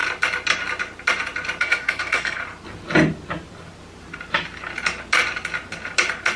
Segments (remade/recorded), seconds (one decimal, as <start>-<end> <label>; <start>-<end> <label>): 0.0-1.6 recorded; 1.6-2.4 remade; 2.4-6.4 recorded